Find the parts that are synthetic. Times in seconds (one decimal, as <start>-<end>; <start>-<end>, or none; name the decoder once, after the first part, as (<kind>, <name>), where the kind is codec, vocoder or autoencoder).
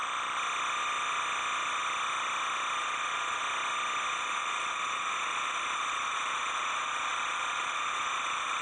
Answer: 2.8-3.4 (vocoder, Vocos); 4.1-8.6